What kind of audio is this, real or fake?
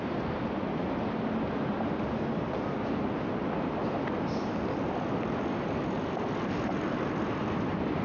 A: real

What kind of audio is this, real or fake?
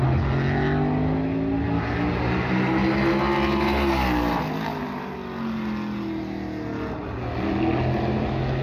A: real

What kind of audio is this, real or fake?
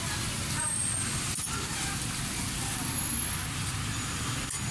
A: real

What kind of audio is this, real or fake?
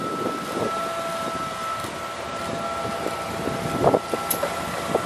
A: real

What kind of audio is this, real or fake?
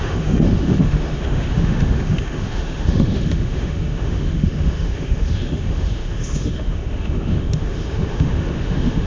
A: fake